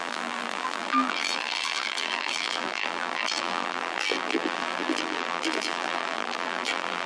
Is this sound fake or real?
fake